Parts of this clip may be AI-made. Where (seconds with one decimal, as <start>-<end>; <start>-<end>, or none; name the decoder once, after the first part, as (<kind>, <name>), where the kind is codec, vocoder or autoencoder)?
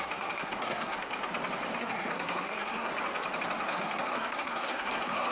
0.0-1.1 (codec, SNAC); 1.8-2.9; 3.7-5.3